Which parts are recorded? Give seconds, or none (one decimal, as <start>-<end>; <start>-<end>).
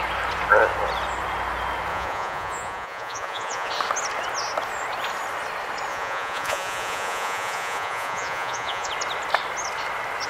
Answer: 0.0-1.9; 3.7-5.9; 8.9-10.3